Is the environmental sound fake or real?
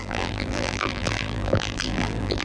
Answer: fake